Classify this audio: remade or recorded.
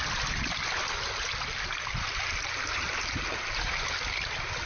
recorded